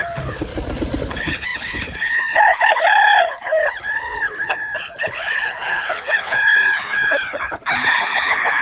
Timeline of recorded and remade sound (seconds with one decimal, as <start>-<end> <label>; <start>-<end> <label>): 0.0-0.5 remade; 0.5-1.0 recorded; 1.0-8.6 remade